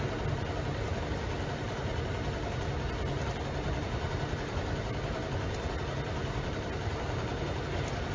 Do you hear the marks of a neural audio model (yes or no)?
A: no